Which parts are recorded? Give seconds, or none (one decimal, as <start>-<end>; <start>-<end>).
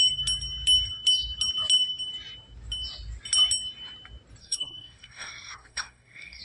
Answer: 0.0-4.4